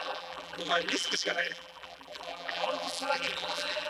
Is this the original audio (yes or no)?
no